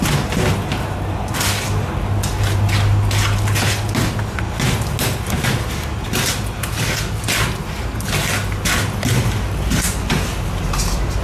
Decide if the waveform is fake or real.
real